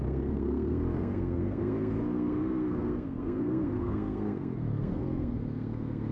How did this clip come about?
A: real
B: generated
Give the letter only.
B